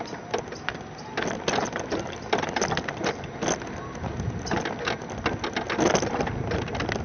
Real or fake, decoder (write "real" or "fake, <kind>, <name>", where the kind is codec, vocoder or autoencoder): real